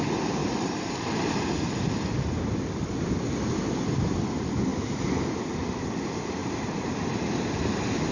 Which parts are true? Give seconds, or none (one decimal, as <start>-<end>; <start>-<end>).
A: 0.0-0.4; 1.4-4.7; 5.2-6.4; 7.5-8.1

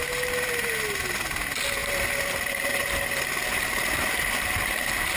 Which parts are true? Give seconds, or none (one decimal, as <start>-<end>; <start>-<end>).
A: 0.0-5.2

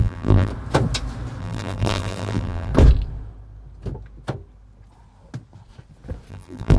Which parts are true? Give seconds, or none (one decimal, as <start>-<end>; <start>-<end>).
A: 0.5-1.4; 2.7-6.3

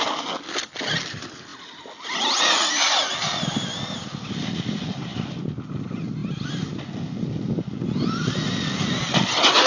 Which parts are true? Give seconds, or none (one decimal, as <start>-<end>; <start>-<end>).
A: 0.0-9.7

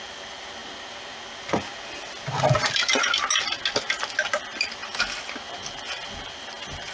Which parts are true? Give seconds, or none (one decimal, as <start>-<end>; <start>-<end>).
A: 0.6-4.0; 4.8-5.6